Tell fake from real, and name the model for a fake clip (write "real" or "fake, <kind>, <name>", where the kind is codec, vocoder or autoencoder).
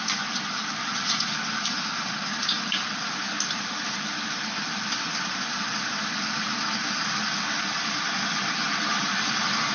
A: real